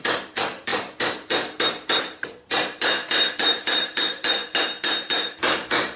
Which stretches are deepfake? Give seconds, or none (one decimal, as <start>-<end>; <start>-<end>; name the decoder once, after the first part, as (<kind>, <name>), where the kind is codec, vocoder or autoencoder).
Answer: 0.0-4.4 (vocoder, BigVGAN v2); 5.1-6.0